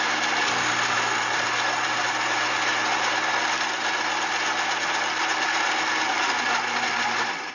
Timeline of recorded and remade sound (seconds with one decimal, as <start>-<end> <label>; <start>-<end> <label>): 0.0-7.5 recorded